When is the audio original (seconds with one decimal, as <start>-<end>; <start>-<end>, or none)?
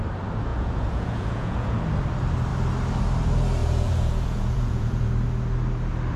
0.0-0.5; 1.8-3.6; 5.1-6.2